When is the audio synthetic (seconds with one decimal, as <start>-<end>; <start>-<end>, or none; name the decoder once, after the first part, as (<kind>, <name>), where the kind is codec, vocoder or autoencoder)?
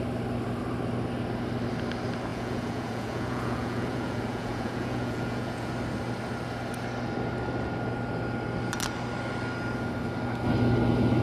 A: 2.3-5.7 (vocoder, Vocos)